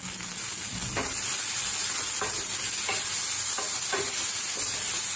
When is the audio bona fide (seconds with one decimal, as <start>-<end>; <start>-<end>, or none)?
0.0-5.2